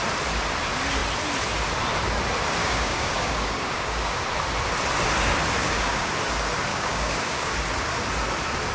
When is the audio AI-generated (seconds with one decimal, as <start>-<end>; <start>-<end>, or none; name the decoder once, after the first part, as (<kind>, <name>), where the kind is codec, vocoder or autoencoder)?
2.6-4.2 (codec, DAC); 5.6-6.1; 6.7-7.5